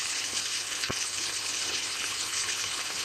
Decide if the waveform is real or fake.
fake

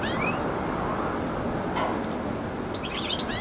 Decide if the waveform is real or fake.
real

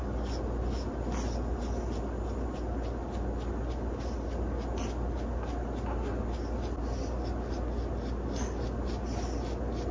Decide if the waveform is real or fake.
real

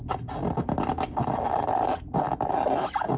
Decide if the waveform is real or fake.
real